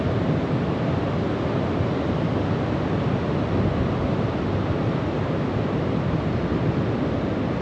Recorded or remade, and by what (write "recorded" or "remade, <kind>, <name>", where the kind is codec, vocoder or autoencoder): recorded